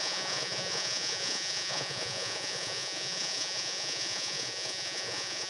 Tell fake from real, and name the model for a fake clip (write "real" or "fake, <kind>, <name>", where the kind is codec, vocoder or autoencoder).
fake, vocoder, Vocos